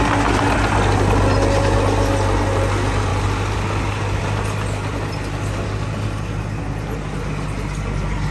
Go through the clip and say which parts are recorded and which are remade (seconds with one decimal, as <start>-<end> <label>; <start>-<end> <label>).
0.0-8.3 recorded